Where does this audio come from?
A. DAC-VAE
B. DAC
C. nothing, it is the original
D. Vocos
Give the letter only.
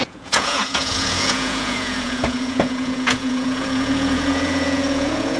D